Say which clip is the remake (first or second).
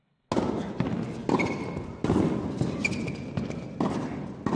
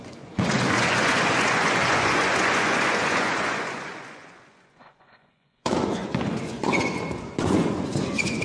second